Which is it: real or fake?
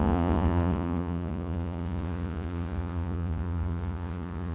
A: fake